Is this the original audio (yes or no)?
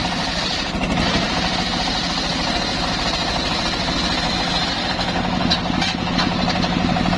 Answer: yes